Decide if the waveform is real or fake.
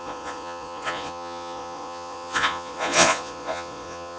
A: fake